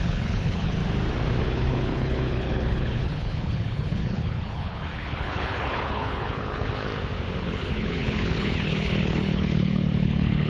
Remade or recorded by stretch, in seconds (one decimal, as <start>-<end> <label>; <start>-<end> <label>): 0.0-0.8 remade; 0.8-1.4 recorded; 1.4-6.9 remade; 6.9-7.4 recorded; 7.4-10.5 remade